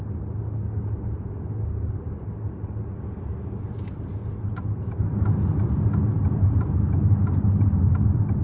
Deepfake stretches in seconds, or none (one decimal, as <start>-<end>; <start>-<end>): none